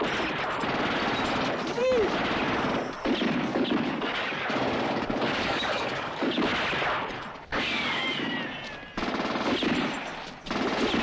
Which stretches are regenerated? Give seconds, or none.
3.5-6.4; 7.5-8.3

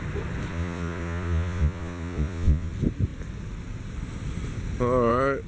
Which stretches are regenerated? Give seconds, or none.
0.5-2.7

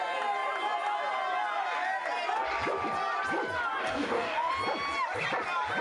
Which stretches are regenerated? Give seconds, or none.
3.8-4.5